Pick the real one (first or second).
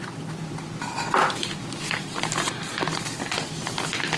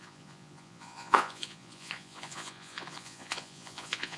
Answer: first